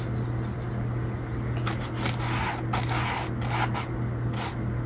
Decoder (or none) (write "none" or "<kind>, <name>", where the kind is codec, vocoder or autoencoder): none